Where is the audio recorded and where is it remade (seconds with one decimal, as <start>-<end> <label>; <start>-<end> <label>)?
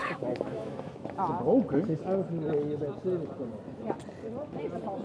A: 0.0-0.9 remade; 0.9-5.0 recorded